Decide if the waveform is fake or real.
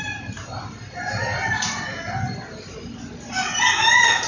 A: real